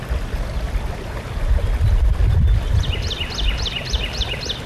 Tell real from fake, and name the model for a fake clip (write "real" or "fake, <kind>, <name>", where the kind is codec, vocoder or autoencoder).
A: real